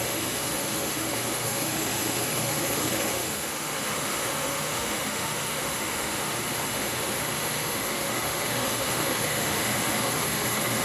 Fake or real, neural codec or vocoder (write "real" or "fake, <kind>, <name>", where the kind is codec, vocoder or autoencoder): fake, autoencoder, DAC-VAE